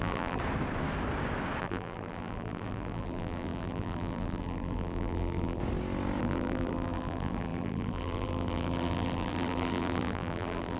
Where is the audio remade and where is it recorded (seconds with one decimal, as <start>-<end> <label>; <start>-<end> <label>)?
0.0-0.4 remade; 0.4-1.6 recorded; 1.6-5.6 remade; 5.6-6.2 recorded; 6.2-10.8 remade